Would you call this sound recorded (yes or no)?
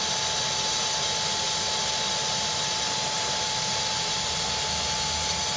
yes